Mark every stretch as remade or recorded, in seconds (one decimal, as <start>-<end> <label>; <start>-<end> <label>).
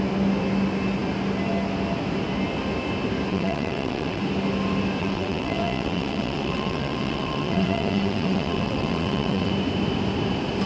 0.0-3.3 recorded; 3.3-4.2 remade; 4.2-5.0 recorded; 5.0-9.5 remade; 9.5-10.7 recorded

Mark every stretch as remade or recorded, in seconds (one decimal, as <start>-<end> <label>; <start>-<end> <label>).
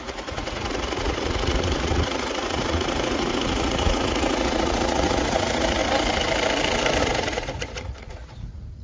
0.0-5.8 remade; 5.8-7.0 recorded; 7.0-8.8 remade